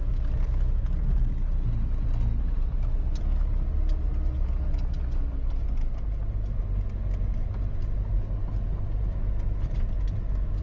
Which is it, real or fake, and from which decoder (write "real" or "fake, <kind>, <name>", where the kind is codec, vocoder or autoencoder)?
real